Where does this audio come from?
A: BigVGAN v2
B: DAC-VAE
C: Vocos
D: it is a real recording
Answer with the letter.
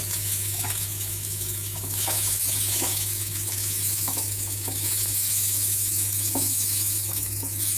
B